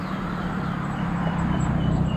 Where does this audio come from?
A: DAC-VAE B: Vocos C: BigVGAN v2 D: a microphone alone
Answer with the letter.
C